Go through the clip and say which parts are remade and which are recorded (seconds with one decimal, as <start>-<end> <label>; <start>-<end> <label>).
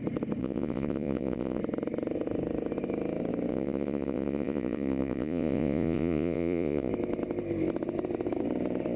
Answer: 0.0-0.4 recorded; 0.4-1.6 remade; 1.6-3.5 recorded; 3.5-6.9 remade; 6.9-9.0 recorded